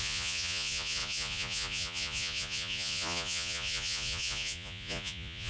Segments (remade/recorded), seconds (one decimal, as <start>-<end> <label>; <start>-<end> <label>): 0.0-5.5 remade